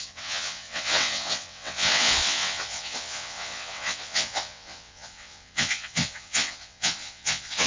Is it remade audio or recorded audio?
remade